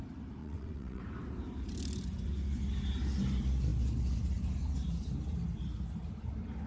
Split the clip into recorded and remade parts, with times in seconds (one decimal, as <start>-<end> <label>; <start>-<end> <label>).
0.0-0.4 recorded; 0.4-1.0 remade; 1.0-6.7 recorded